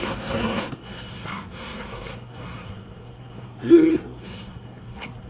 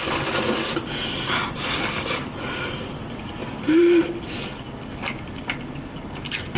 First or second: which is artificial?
first